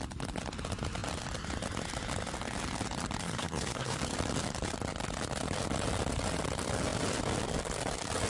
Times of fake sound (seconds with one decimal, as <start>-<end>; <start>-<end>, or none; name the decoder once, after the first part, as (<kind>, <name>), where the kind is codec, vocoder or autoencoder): 3.2-4.0 (codec, SNAC)